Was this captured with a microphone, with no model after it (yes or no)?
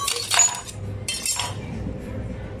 no